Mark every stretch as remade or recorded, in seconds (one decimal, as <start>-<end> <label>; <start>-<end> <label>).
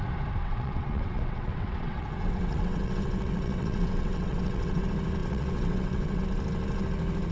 0.0-0.4 recorded; 0.4-4.8 remade; 4.8-5.2 recorded; 5.2-6.2 remade; 6.2-7.3 recorded